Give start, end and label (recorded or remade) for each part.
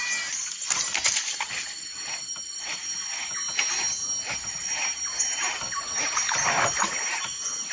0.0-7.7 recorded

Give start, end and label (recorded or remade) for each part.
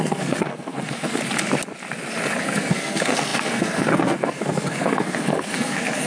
0.0-1.2 remade; 1.2-2.4 recorded; 2.4-6.1 remade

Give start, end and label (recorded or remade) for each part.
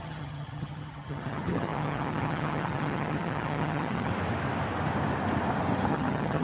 0.0-4.1 remade; 4.1-5.9 recorded; 5.9-6.4 remade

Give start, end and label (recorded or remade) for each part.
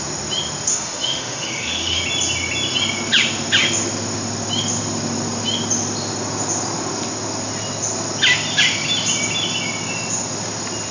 0.0-0.7 recorded; 0.7-2.0 remade; 2.0-10.9 recorded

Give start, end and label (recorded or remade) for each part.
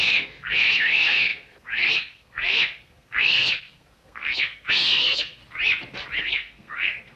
0.0-5.4 remade; 5.4-6.2 recorded; 6.2-7.2 remade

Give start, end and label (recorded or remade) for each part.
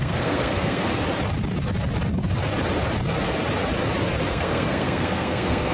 0.0-0.9 remade; 0.9-4.3 recorded; 4.3-5.7 remade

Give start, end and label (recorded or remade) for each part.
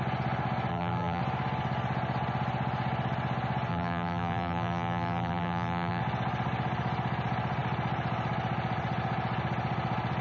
0.0-0.7 recorded; 0.7-1.2 remade; 1.2-3.7 recorded; 3.7-6.0 remade; 6.0-10.2 recorded